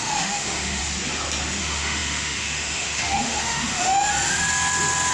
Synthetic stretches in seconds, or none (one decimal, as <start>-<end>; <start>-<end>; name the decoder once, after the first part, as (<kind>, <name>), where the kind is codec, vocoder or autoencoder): 0.0-0.8 (autoencoder, DAC-VAE); 1.6-4.1